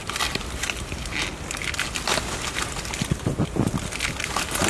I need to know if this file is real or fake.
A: real